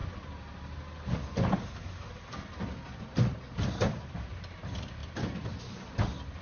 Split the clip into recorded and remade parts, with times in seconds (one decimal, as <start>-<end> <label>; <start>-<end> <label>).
0.0-6.4 recorded